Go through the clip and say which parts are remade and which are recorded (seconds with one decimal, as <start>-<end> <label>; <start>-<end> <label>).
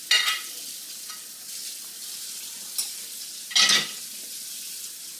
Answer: 0.0-5.2 recorded